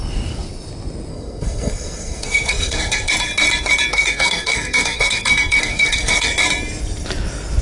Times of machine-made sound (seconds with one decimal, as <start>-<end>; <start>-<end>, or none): 1.1-3.1; 3.9-6.3